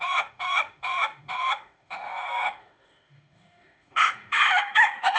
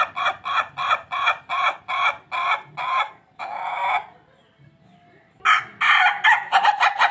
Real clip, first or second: second